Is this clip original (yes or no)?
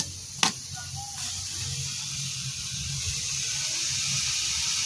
yes